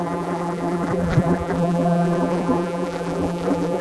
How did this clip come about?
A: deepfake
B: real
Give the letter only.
A